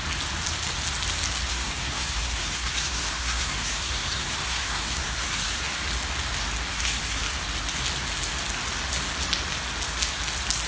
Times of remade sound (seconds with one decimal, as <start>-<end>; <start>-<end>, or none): 1.5-5.6; 6.7-7.2